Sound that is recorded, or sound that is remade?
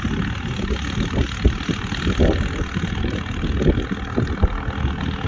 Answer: recorded